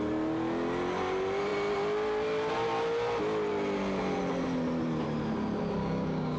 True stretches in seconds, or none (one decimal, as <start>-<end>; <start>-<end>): 0.0-5.8